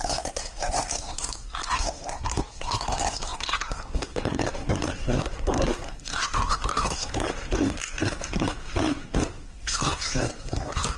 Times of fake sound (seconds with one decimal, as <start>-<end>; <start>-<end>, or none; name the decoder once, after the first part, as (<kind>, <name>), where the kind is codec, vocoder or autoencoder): 0.0-11.0 (codec, SNAC)